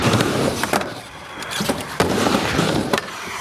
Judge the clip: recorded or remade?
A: remade